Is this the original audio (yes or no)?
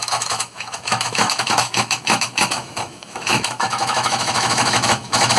no